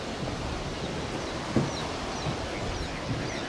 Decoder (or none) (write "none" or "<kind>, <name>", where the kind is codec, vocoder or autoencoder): none